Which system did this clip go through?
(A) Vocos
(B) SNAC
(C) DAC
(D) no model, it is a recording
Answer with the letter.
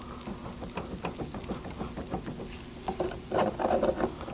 D